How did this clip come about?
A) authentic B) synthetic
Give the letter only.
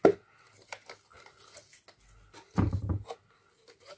A